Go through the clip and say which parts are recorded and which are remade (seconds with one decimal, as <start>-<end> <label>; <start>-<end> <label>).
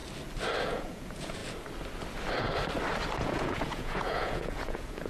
0.0-0.6 recorded; 0.6-1.4 remade; 1.4-3.2 recorded; 3.2-5.1 remade